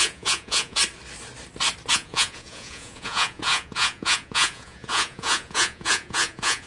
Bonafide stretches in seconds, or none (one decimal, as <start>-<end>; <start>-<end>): 0.8-1.9